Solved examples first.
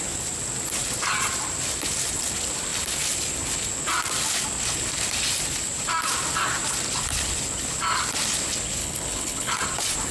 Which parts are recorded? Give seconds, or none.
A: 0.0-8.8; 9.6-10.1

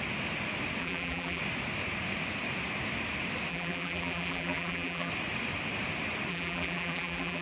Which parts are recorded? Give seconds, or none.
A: 0.0-0.8; 1.4-3.5; 5.1-6.3

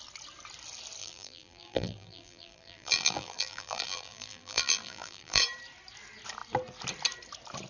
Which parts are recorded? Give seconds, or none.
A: 0.0-1.0; 5.4-7.7

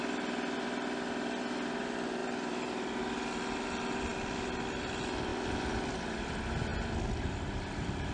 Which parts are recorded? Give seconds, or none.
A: 0.0-2.2; 3.0-6.7

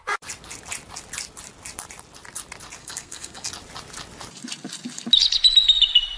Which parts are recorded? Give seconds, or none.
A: 0.0-2.8; 3.5-6.2